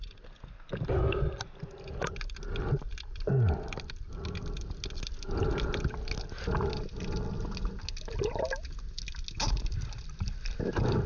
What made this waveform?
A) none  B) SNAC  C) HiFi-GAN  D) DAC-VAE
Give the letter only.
A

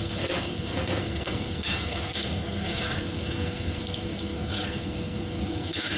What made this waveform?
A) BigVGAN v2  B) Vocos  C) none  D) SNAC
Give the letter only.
D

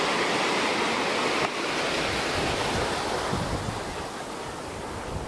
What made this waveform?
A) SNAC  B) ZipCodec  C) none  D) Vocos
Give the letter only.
C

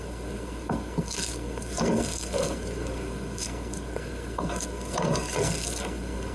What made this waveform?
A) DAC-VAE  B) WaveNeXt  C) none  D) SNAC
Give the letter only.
D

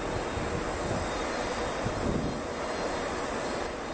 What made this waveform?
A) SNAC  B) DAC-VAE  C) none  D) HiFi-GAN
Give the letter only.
C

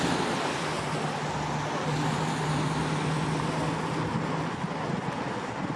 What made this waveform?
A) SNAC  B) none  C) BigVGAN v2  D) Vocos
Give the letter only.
B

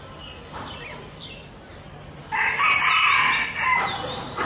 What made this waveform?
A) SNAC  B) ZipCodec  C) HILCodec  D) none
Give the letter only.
D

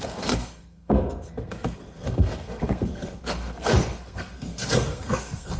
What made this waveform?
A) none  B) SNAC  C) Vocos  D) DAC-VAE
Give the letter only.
B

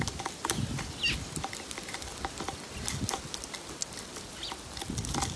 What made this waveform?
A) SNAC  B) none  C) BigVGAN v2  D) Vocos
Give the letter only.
B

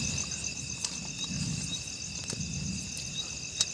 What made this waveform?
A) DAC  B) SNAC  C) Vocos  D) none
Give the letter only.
D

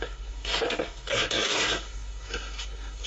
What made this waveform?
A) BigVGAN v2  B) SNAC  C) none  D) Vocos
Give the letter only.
B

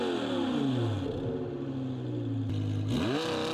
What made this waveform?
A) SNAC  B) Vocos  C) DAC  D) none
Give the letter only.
D